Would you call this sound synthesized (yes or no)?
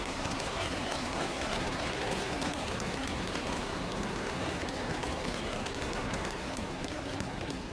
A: yes